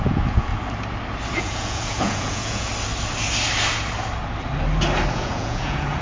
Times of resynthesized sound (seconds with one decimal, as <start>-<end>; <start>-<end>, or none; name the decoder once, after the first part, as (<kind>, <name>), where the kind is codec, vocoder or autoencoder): 0.0-0.5 (vocoder, Vocos); 1.4-2.7; 5.1-6.0